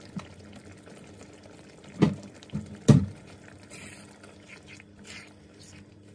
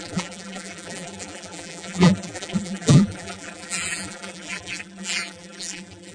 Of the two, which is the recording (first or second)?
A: first